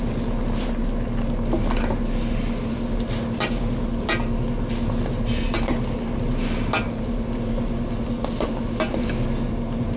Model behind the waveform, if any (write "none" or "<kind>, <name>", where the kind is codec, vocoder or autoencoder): none